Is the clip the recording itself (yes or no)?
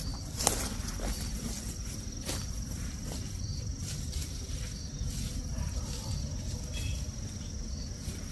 yes